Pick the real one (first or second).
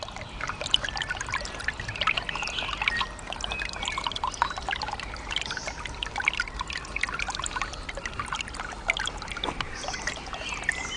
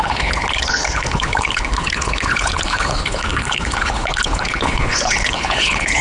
first